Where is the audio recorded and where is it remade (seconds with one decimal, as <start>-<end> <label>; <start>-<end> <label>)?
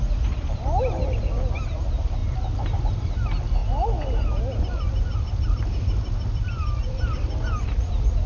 0.0-2.2 remade; 2.2-2.8 recorded; 2.8-3.6 remade; 3.6-4.6 recorded; 4.6-8.3 remade